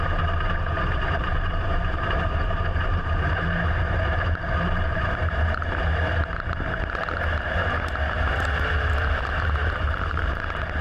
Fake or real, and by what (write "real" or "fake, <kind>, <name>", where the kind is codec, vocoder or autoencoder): fake, vocoder, BigVGAN v2